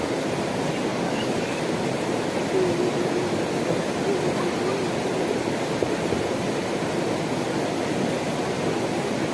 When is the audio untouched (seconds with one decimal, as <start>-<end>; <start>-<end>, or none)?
0.0-0.9; 1.6-9.3